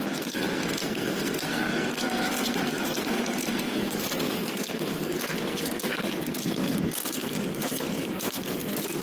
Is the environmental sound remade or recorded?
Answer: remade